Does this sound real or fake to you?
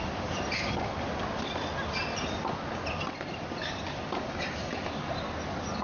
real